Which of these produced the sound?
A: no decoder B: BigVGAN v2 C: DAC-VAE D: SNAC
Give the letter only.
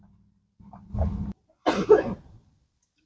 A